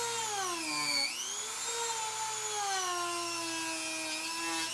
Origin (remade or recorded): recorded